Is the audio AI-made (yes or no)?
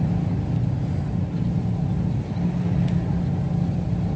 no